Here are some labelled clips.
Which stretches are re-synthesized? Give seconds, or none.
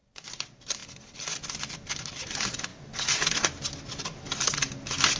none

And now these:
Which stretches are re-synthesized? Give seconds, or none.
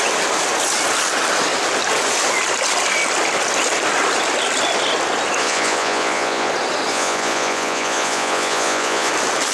5.4-6.5 (vocoder, Vocos); 6.9-9.1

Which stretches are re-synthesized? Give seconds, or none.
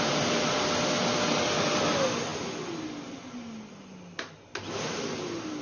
none